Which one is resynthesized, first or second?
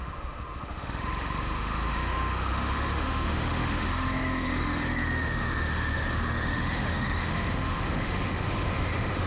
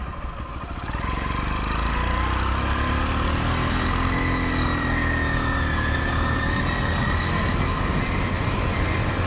first